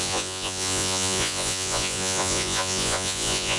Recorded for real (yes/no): no